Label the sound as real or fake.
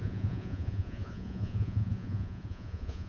fake